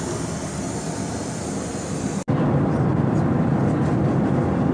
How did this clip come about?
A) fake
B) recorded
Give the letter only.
B